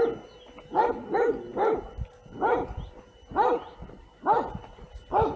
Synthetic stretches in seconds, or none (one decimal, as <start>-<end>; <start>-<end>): 1.5-4.6